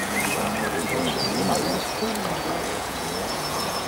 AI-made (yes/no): yes